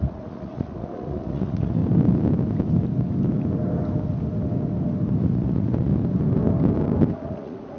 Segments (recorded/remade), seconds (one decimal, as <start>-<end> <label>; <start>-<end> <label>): 0.0-1.8 remade; 1.8-5.2 recorded; 5.2-5.9 remade; 5.9-7.1 recorded; 7.1-7.8 remade